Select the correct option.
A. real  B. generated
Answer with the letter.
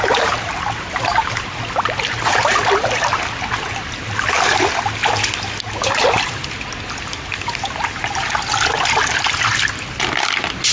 A